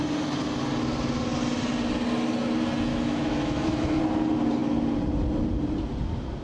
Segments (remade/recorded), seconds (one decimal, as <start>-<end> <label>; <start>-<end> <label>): 0.0-2.9 recorded; 2.9-4.0 remade; 4.0-6.4 recorded